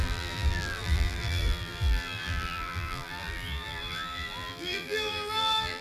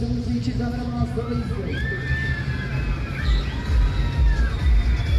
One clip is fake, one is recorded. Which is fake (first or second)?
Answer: first